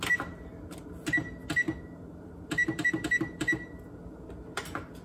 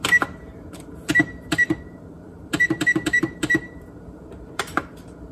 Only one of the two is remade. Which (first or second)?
second